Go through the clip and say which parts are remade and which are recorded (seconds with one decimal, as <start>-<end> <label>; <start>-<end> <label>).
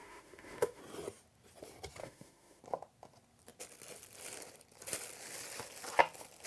0.0-0.8 remade; 0.8-2.0 recorded; 2.0-2.6 remade; 2.6-6.5 recorded